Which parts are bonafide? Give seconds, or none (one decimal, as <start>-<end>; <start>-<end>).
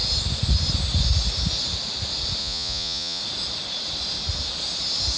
0.0-2.4; 3.2-5.2